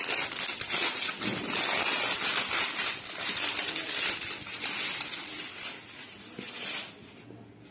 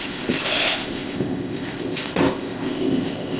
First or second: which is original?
first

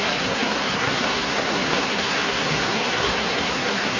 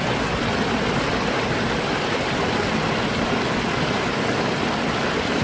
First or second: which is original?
second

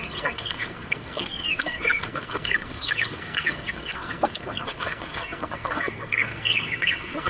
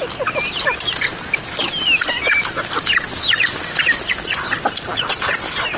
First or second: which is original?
second